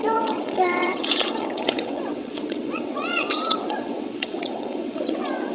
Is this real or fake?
fake